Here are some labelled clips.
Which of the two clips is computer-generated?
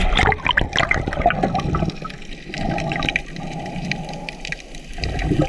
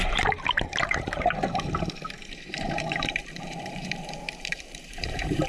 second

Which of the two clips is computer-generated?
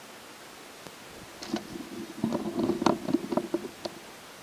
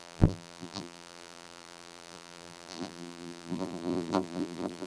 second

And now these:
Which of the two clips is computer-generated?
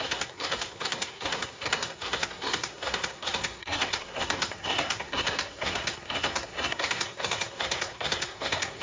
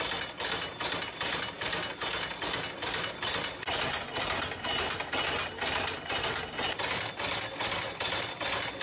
first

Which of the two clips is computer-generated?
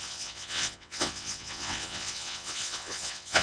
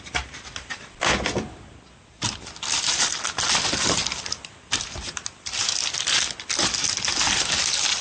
first